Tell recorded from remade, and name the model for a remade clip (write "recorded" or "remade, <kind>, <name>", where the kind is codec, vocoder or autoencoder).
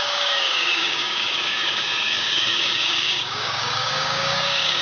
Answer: remade, codec, DAC